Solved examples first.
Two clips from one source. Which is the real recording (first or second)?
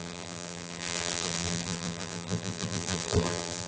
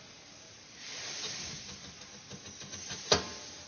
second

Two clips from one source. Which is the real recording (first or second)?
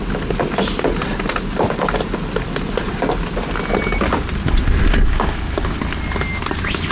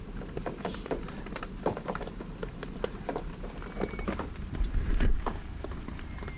first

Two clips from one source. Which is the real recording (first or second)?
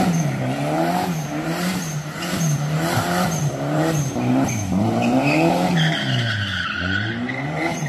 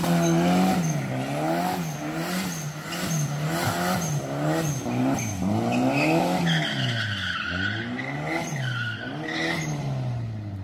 second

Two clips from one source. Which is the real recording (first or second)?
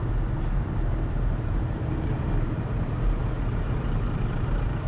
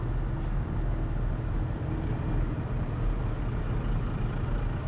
second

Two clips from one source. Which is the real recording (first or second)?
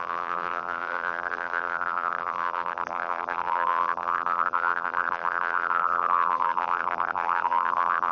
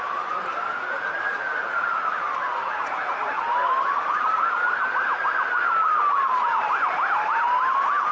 second